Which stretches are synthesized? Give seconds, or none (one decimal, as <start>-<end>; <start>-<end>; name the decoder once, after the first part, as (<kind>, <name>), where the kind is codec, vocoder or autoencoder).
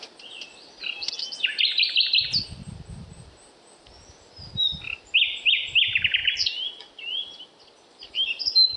none